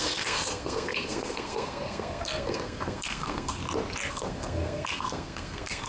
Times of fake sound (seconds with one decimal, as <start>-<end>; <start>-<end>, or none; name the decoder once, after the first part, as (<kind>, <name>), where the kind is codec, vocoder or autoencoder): 0.0-3.6 (codec, SNAC); 4.1-5.9